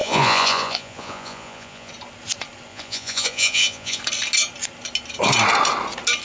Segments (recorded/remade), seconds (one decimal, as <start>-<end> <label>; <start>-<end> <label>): 0.0-1.9 remade; 1.9-2.7 recorded; 2.7-4.0 remade; 4.0-6.2 recorded